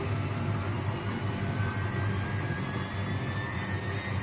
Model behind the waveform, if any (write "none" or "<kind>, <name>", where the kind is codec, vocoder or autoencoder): vocoder, BigVGAN v2